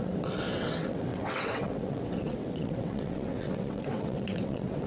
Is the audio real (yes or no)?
no